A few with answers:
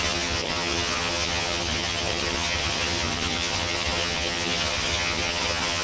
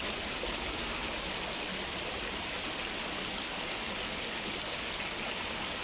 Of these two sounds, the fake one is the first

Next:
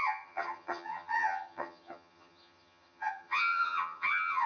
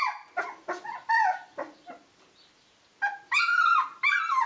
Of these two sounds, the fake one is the first